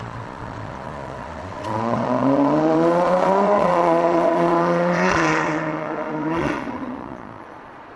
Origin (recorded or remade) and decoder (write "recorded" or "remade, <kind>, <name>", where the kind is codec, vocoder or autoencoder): remade, vocoder, Vocos